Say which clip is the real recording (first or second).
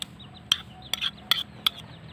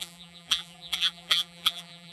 first